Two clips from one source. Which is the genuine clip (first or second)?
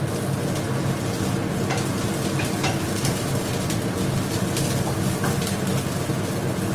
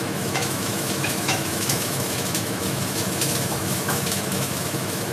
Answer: first